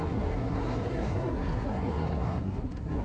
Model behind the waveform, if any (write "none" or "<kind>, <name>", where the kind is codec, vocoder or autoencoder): codec, SNAC